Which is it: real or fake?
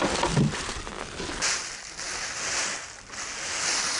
real